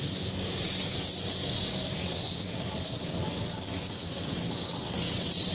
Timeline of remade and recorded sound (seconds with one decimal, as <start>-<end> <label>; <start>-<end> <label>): 0.0-2.0 recorded; 2.0-5.5 remade

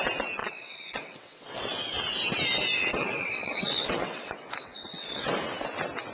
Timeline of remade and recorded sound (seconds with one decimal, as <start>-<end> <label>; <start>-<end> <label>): 0.0-0.4 recorded; 0.4-1.6 remade; 1.6-2.9 recorded; 2.9-5.3 remade; 5.3-6.1 recorded

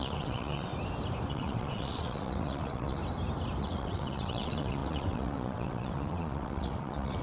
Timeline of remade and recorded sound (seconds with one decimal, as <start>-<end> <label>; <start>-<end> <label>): 0.0-0.7 remade; 0.7-1.3 recorded; 1.3-3.0 remade; 3.0-3.6 recorded; 3.6-7.2 remade

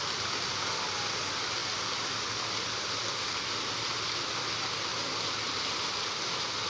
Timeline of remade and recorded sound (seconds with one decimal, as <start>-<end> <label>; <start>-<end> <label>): 0.0-6.7 recorded

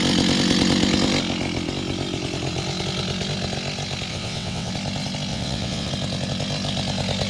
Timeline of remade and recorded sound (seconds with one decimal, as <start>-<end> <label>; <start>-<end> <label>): 0.0-4.1 recorded; 4.1-4.7 remade; 4.7-5.3 recorded; 5.3-5.9 remade; 5.9-7.3 recorded

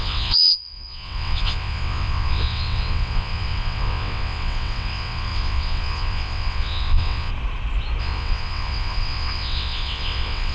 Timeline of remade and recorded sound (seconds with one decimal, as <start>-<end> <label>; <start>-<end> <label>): 0.0-7.3 remade; 7.3-8.0 recorded; 8.0-10.5 remade

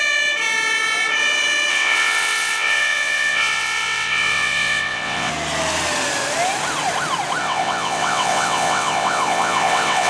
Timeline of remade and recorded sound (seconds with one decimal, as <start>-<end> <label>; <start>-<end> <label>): 0.0-1.7 recorded; 1.7-5.3 remade; 5.3-7.4 recorded; 7.4-10.1 remade

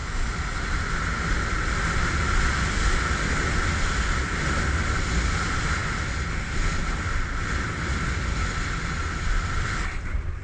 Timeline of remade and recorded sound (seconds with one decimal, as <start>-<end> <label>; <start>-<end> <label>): 0.0-10.4 recorded